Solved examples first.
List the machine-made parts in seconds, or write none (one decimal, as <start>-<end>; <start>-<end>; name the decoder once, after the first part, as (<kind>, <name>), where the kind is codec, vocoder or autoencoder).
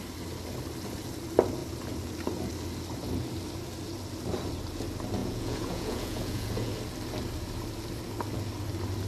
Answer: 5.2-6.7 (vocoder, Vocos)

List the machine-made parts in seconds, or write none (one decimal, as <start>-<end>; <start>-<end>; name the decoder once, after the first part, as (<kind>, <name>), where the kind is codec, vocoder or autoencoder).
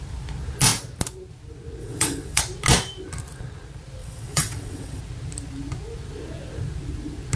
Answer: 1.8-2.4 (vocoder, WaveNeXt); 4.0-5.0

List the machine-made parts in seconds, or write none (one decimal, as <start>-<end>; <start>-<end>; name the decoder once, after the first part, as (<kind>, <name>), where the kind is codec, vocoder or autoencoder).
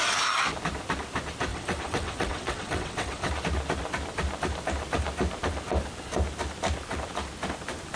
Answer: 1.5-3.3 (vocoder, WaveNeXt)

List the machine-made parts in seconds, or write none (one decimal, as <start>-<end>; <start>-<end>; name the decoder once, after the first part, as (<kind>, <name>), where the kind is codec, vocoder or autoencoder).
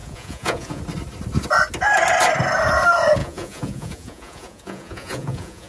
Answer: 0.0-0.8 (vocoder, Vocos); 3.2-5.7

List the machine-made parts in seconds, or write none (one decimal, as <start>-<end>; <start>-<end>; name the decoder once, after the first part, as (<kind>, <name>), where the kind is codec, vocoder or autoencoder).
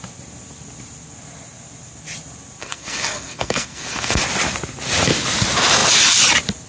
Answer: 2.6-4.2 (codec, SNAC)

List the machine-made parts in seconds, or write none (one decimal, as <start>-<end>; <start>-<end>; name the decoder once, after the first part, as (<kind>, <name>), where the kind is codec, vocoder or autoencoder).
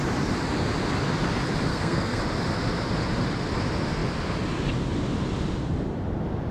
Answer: 1.7-2.2 (codec, SNAC)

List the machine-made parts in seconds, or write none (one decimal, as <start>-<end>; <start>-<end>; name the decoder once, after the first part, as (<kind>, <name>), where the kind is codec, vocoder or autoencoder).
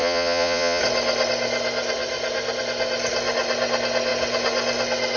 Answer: 0.0-0.8 (vocoder, Vocos)